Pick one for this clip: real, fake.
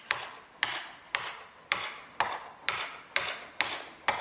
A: real